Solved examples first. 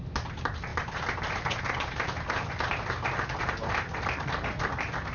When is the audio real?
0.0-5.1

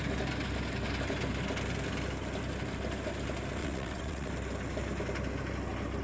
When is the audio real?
0.0-3.6; 4.3-6.0

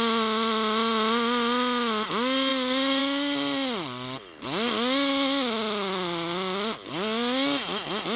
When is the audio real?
0.0-8.2

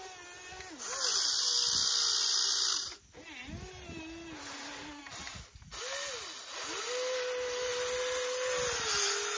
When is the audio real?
0.0-9.4

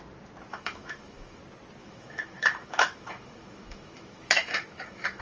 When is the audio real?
0.0-0.5; 1.4-1.8

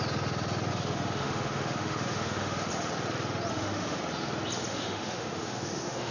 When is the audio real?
0.0-0.7; 2.7-3.5; 4.0-4.7

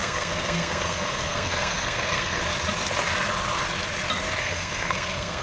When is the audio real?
2.4-4.4

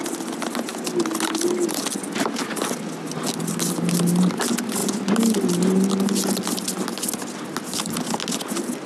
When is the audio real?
0.0-8.9